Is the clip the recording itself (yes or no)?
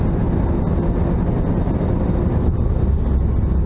yes